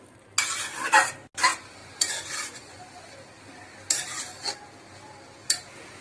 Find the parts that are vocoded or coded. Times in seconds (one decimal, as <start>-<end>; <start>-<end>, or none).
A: 1.8-2.8